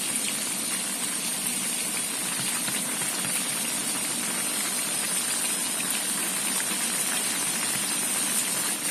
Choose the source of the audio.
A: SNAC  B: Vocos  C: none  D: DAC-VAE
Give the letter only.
C